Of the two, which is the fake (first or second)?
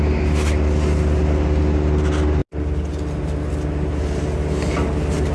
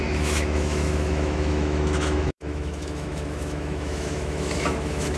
second